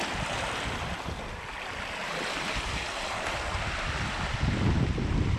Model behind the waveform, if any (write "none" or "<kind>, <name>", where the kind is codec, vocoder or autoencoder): none